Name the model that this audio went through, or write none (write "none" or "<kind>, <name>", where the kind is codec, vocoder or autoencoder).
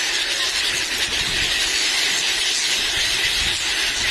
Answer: none